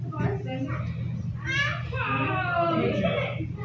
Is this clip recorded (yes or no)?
yes